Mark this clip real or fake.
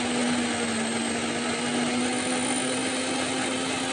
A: real